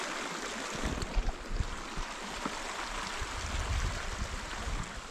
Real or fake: real